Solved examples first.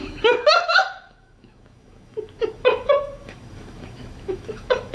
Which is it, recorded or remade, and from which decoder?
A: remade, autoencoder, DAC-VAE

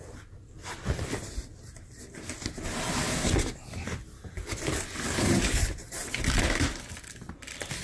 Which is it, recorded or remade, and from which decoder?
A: recorded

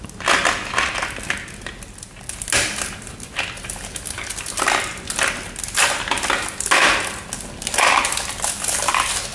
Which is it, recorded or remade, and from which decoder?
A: recorded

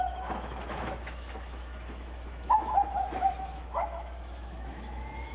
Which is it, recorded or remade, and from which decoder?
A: remade, autoencoder, DAC-VAE